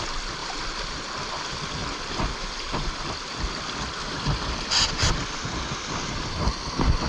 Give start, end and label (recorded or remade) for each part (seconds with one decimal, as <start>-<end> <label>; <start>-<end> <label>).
0.0-0.4 recorded; 0.4-0.9 remade; 0.9-1.8 recorded; 1.8-6.1 remade; 6.1-7.1 recorded